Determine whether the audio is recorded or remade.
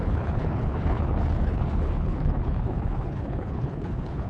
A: remade